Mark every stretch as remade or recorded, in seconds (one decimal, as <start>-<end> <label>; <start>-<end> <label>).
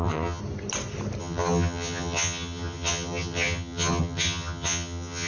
0.0-0.4 remade; 0.4-1.2 recorded; 1.2-5.3 remade